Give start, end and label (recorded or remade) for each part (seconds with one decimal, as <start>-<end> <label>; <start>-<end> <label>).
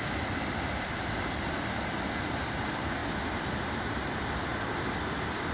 0.0-5.5 recorded